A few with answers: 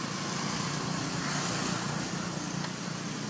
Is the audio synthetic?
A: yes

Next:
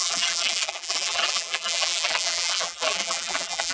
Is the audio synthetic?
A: yes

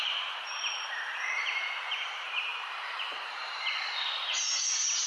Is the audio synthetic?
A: yes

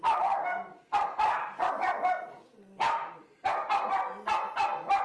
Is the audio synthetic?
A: no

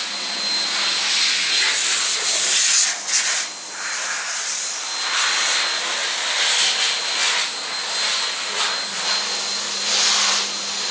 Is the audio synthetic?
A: no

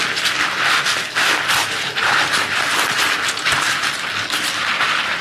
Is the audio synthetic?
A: no